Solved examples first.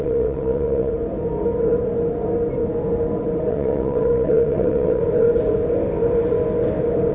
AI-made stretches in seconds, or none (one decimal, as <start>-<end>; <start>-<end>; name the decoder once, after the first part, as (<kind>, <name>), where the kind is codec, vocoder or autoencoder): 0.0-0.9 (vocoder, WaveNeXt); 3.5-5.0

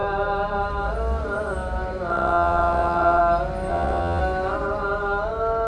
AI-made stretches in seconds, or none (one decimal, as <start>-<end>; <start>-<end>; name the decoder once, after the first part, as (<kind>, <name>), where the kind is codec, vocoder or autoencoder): 2.1-3.2 (vocoder, WaveNeXt); 3.7-4.2

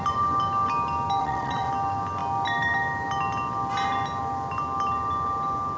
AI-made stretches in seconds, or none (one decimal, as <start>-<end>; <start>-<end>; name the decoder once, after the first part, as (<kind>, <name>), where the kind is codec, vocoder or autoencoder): 1.2-1.7 (vocoder, WaveNeXt)